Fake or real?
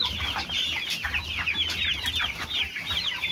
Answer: real